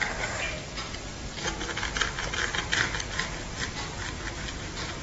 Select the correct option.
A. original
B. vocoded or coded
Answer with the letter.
A